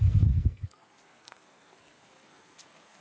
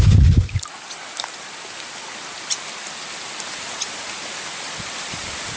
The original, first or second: second